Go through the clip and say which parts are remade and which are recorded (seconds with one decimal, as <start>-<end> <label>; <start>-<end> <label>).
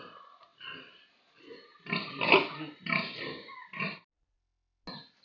0.0-5.2 recorded